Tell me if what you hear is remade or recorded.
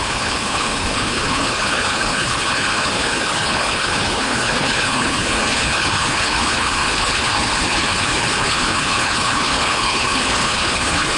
remade